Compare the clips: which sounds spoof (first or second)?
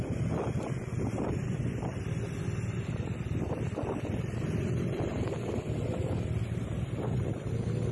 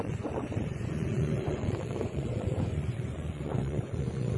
second